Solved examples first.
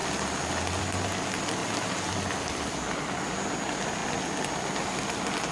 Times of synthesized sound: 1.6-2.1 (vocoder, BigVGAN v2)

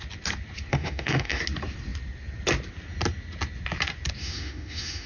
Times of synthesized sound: 0.7-1.4 (autoencoder, DAC-VAE); 4.2-5.1

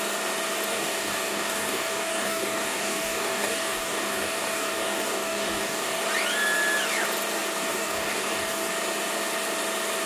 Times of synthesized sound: 0.7-6.0 (codec, DAC); 7.7-8.7

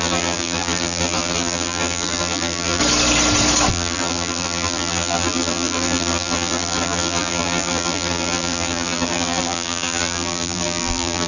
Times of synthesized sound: 0.0-2.8 (vocoder, BigVGAN v2); 3.7-11.3

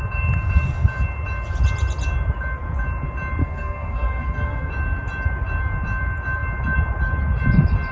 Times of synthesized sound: 3.4-4.7 (codec, SNAC)